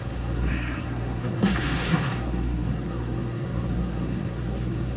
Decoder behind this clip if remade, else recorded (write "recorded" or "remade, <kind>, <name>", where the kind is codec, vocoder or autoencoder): remade, codec, SNAC